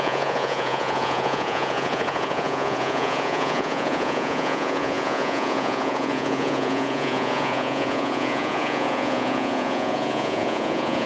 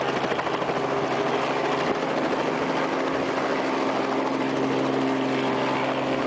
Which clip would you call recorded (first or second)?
second